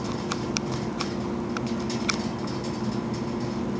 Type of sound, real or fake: real